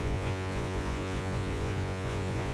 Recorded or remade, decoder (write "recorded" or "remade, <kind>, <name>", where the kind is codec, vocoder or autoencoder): remade, vocoder, Vocos